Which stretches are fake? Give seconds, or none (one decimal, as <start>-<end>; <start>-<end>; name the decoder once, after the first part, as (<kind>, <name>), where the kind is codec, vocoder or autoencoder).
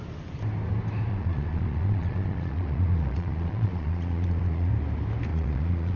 1.1-4.7 (vocoder, Vocos); 5.3-6.0